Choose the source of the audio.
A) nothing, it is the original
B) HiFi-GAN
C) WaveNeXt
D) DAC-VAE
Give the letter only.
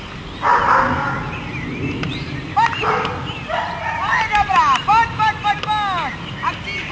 A